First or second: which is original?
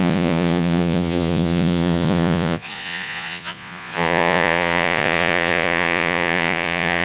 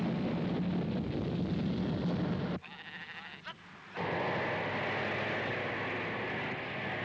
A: second